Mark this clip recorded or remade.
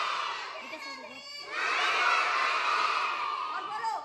recorded